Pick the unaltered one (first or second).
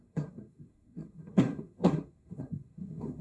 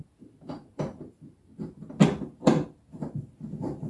second